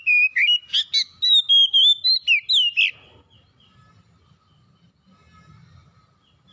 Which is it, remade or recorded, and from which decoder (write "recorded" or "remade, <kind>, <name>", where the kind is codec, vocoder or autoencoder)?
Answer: recorded